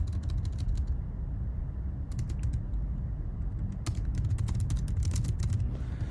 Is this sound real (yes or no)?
yes